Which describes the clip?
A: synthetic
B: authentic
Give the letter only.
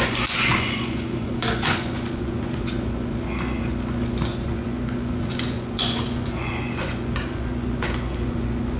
A